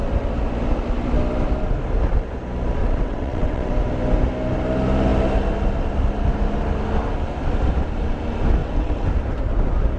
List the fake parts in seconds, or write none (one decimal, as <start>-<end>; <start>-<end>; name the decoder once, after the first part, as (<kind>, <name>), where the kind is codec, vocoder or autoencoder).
2.8-3.7 (vocoder, WaveNeXt); 8.6-9.1

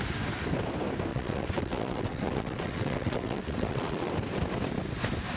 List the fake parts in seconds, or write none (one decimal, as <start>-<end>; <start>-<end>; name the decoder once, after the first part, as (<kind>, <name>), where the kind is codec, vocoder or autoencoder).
1.1-4.1 (vocoder, WaveNeXt)